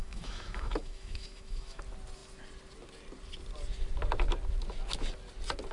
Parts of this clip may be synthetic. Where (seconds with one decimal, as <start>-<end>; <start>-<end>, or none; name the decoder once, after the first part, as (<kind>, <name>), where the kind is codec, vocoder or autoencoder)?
0.0-1.8 (autoencoder, DAC-VAE)